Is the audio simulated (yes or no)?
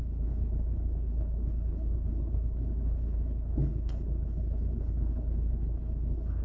yes